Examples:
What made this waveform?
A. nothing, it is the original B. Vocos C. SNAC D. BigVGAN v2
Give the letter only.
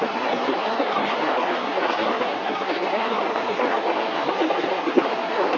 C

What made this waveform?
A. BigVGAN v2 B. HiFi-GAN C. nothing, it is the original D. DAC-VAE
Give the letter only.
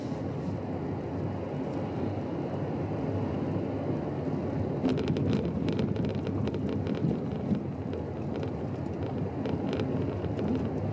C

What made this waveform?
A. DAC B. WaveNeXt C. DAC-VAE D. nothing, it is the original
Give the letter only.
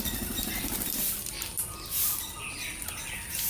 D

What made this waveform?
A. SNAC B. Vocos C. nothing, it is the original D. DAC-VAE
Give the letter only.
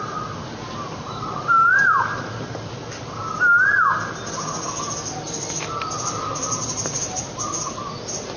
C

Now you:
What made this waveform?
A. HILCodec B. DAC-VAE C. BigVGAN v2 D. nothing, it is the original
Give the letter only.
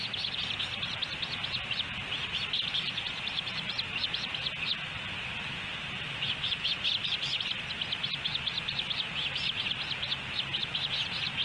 D